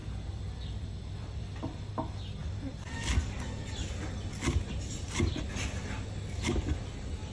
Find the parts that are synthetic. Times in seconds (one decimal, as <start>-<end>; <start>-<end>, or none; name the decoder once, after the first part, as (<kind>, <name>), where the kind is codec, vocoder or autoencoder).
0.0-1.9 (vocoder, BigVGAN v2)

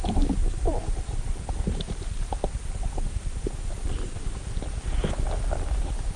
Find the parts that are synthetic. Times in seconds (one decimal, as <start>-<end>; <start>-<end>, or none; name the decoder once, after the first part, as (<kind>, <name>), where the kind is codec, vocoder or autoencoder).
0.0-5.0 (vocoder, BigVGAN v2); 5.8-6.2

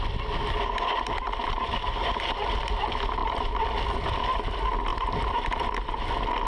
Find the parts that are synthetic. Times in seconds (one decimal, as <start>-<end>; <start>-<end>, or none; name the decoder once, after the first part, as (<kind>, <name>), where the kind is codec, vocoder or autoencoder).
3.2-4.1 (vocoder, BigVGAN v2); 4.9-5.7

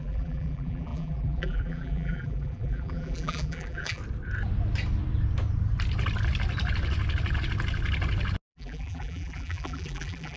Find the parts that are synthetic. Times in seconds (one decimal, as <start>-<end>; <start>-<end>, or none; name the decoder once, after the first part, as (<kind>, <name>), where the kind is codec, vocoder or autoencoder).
0.0-4.0 (vocoder, BigVGAN v2); 8.5-10.4